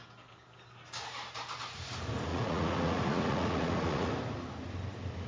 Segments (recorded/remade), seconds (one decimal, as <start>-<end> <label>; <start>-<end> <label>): 0.0-2.3 recorded; 2.3-4.1 remade; 4.1-5.3 recorded